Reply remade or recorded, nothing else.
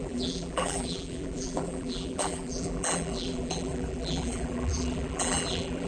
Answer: remade